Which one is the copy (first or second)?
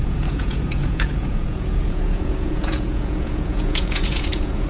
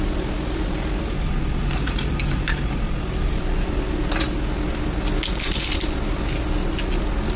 first